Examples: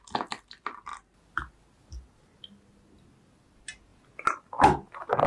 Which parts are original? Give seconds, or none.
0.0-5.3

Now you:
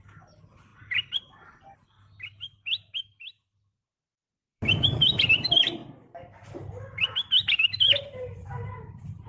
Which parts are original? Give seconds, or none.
5.8-7.3

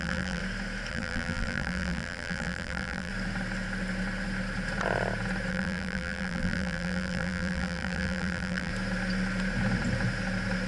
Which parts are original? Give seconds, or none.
0.4-0.9; 3.1-5.5; 8.7-10.7

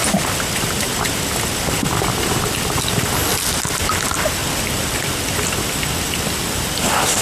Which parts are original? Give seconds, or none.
3.0-4.4; 5.6-7.2

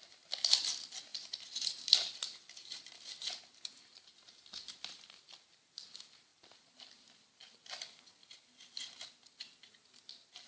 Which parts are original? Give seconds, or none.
0.0-1.1; 2.9-6.3; 6.9-10.5

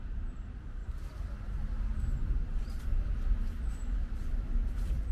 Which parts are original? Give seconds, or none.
0.8-2.1; 2.9-4.2